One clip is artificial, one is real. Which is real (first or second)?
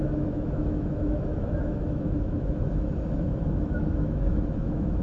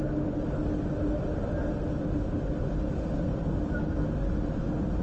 second